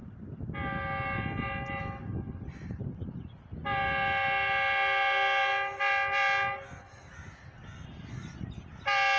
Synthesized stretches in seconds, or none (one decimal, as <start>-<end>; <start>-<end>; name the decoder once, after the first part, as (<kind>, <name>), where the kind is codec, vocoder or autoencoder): none